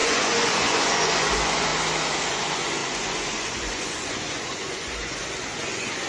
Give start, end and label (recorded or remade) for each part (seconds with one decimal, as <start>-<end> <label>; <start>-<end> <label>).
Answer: 0.0-1.7 remade; 1.7-2.2 recorded; 2.2-6.1 remade